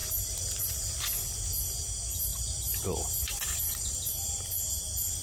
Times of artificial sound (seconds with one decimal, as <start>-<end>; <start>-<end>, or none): 2.3-4.8